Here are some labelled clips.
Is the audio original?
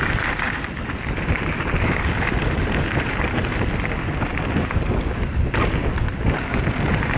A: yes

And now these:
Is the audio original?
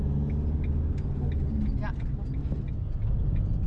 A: yes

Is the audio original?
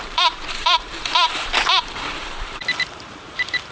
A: no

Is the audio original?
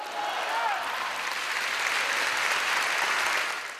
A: yes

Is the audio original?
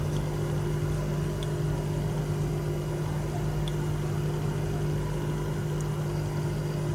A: yes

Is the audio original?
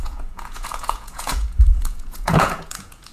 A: no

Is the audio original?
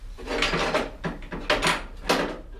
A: yes